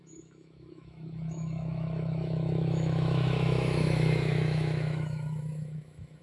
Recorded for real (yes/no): no